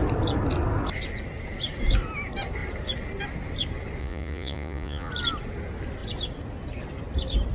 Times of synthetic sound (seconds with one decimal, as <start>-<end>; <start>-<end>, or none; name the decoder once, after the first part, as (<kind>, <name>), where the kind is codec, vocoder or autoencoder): 4.0-5.1 (vocoder, Vocos)